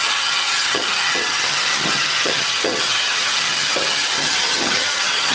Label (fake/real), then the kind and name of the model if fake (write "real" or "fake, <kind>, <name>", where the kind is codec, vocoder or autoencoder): fake, vocoder, HiFi-GAN